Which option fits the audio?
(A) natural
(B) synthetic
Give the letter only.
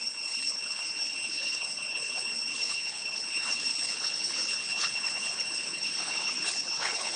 B